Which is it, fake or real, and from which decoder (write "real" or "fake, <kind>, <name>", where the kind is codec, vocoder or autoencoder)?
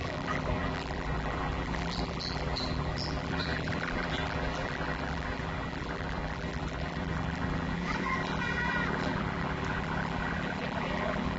fake, vocoder, BigVGAN v2